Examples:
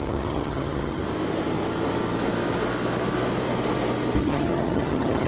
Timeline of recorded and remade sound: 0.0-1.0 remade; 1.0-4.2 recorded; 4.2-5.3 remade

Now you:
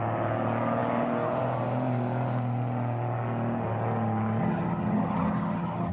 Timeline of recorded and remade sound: 0.0-4.4 recorded; 4.4-5.9 remade

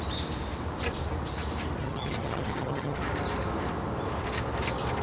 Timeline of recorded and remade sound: 0.0-1.8 recorded; 1.8-3.0 remade; 3.0-5.0 recorded

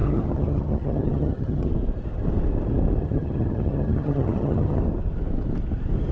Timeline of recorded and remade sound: 0.0-1.7 remade; 1.7-3.0 recorded; 3.0-4.8 remade; 4.8-6.1 recorded